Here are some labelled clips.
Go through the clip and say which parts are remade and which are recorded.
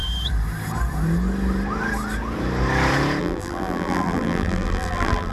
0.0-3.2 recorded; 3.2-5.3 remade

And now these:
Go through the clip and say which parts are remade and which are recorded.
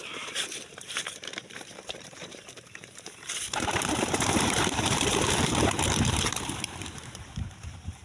0.0-8.0 remade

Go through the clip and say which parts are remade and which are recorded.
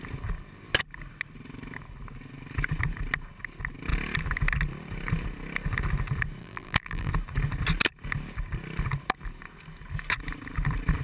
0.0-6.4 recorded; 6.4-7.1 remade; 7.1-11.0 recorded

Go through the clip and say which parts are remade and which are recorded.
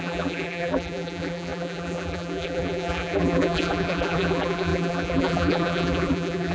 0.0-6.5 remade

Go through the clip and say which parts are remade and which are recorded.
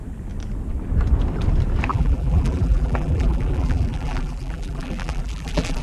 0.0-1.9 recorded; 1.9-5.8 remade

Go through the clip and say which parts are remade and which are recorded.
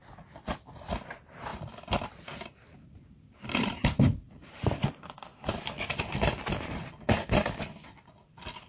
0.0-2.7 recorded; 2.7-5.2 remade; 5.2-8.7 recorded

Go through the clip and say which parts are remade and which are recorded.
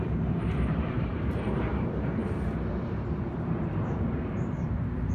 0.0-2.2 remade; 2.2-2.8 recorded; 2.8-5.1 remade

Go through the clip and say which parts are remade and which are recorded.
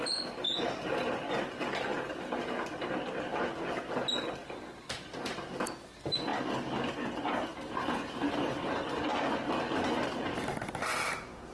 0.0-1.9 recorded; 1.9-2.8 remade; 2.8-4.4 recorded; 4.4-5.6 remade; 5.6-7.5 recorded; 7.5-8.7 remade; 8.7-11.5 recorded